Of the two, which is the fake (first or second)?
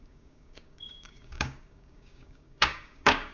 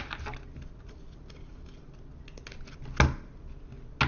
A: first